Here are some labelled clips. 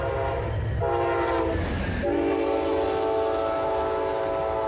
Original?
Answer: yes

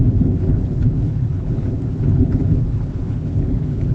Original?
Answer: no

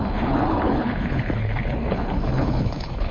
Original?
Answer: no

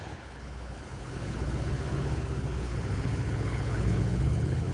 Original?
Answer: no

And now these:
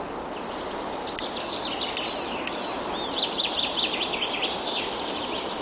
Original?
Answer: yes